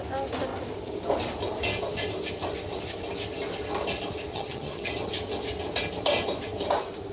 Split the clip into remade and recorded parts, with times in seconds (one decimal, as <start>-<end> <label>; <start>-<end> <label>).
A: 0.0-4.3 recorded; 4.3-4.9 remade; 4.9-7.1 recorded